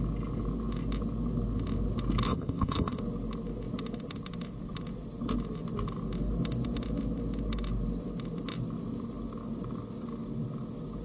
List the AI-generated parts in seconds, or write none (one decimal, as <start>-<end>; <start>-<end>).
2.3-3.0